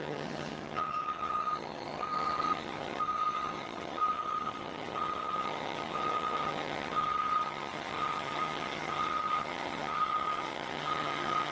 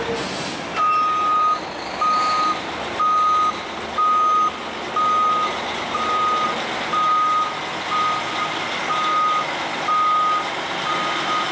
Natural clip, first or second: second